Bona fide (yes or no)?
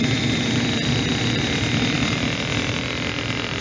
yes